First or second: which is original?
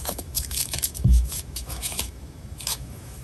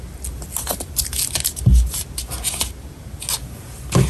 second